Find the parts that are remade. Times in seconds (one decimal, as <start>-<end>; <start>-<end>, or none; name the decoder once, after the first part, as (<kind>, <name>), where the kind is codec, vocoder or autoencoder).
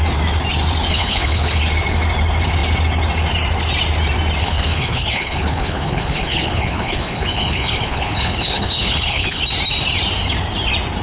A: 0.9-1.6 (codec, HILCodec); 4.4-9.4